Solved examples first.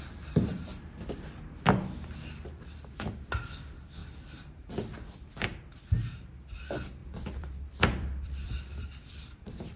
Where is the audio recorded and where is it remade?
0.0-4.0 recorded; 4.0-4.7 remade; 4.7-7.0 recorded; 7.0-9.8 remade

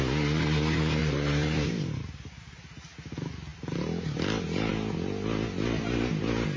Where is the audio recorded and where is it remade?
0.0-1.0 recorded; 1.0-2.4 remade; 2.4-6.6 recorded

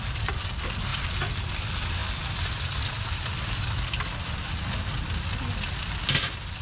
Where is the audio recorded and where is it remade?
0.0-6.6 recorded

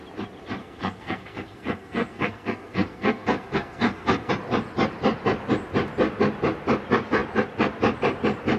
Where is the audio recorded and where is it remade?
0.0-0.6 recorded; 0.6-4.3 remade; 4.3-8.6 recorded